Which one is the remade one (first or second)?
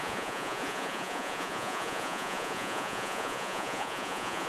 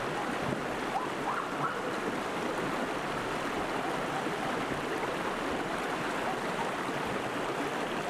first